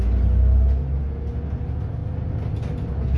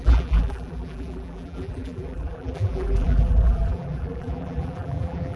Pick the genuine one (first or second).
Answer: first